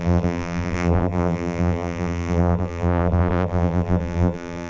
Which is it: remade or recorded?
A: remade